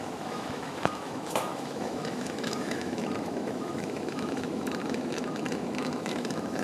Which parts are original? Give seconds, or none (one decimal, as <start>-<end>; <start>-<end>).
none